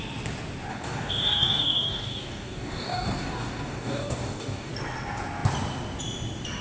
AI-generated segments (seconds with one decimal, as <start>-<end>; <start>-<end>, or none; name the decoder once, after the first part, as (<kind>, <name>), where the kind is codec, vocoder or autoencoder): 0.7-4.7 (codec, DAC)